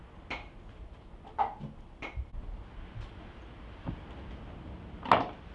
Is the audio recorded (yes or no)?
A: yes